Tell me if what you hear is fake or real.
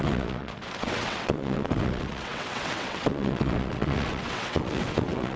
fake